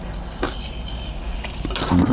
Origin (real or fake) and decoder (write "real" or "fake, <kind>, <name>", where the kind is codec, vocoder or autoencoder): real